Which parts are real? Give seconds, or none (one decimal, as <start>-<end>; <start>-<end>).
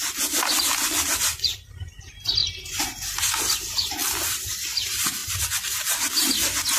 2.4-3.4; 5.2-5.7